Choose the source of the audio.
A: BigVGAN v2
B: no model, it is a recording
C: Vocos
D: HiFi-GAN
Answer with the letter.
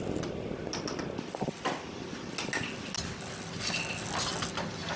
B